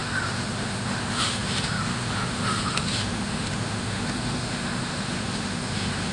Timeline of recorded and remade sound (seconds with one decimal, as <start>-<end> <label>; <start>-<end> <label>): 0.0-6.1 remade